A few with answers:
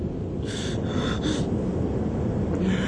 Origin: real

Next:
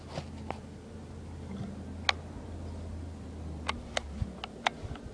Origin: real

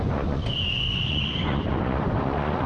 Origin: fake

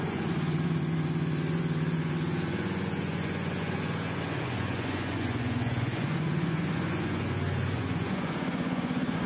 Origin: fake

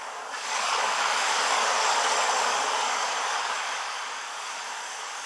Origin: fake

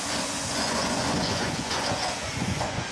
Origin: fake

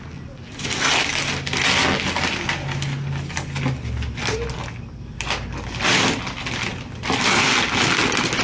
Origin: real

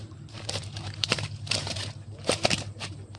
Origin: fake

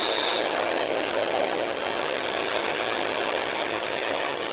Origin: fake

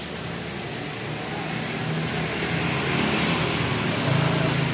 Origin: real